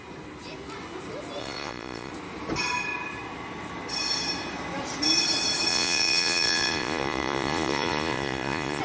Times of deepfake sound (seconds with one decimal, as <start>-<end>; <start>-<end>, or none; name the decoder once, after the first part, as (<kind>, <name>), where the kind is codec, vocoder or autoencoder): 1.4-2.1 (vocoder, Vocos); 5.7-8.8